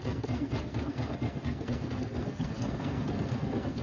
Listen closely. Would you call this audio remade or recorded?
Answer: remade